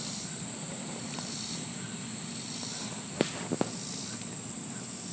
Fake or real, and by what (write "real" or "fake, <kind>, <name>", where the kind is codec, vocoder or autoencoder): real